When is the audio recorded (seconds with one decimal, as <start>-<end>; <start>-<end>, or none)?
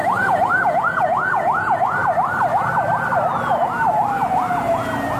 2.0-5.2